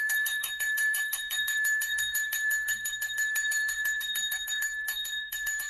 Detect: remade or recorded remade